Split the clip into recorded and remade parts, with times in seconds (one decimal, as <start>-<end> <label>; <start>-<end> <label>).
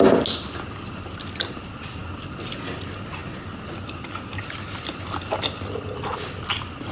0.0-6.9 recorded